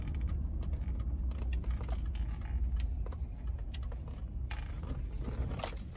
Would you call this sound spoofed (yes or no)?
no